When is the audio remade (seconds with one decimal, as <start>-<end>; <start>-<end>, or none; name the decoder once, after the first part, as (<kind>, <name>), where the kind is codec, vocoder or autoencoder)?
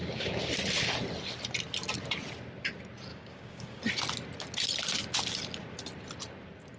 0.0-0.5 (codec, DAC); 3.1-3.8